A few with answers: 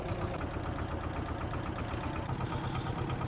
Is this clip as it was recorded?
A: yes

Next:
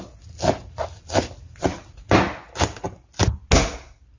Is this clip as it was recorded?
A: yes